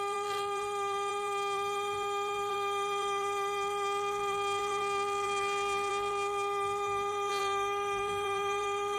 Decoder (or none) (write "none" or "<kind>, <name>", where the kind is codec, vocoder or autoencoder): vocoder, BigVGAN v2